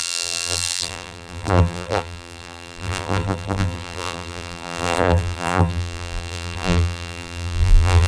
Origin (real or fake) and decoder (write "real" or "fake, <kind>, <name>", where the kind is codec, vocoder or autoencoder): fake, vocoder, BigVGAN v2